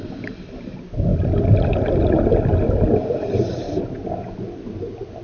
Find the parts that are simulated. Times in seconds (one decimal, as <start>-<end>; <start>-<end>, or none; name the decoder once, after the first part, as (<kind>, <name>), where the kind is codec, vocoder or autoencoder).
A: none

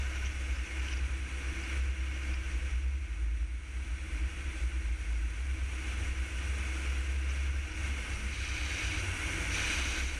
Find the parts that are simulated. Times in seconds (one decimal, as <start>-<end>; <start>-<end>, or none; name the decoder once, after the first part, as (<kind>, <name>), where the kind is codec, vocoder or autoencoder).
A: 4.0-4.6 (vocoder, BigVGAN v2)

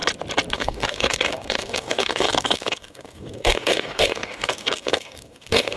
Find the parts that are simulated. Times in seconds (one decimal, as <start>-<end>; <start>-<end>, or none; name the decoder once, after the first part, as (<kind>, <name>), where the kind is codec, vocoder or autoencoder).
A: 0.5-5.8 (codec, DAC)

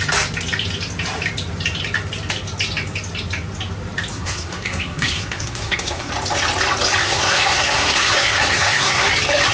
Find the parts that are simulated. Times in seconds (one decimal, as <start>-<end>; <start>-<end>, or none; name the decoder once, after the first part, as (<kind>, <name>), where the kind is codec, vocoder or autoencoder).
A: 4.1-6.1 (codec, SNAC); 7.0-9.1

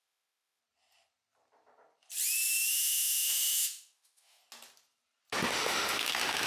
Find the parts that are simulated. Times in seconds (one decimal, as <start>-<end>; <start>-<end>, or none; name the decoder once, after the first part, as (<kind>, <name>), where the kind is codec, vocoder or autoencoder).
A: 0.0-0.6 (autoencoder, DAC-VAE); 2.7-4.4; 5.5-6.5

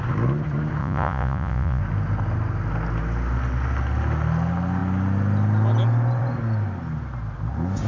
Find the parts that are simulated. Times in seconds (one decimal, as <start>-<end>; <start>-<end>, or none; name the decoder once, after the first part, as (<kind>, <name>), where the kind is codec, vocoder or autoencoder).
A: 0.8-1.8 (vocoder, Vocos)

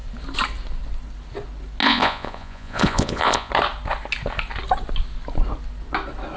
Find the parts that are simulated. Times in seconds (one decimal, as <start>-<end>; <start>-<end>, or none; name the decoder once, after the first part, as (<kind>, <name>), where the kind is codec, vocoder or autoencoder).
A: 1.8-3.5 (vocoder, Vocos)